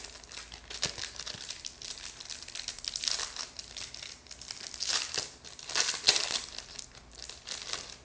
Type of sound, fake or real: real